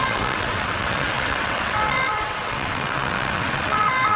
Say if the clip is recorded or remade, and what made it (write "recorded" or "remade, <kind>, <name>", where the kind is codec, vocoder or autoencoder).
remade, vocoder, WaveNeXt